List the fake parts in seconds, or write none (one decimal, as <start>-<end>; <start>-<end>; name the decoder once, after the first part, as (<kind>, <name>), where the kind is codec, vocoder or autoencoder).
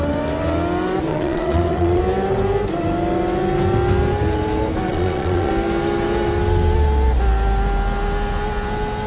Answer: 1.1-2.0 (vocoder, Vocos); 4.9-5.5